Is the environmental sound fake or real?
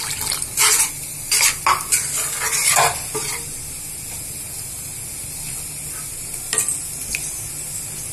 real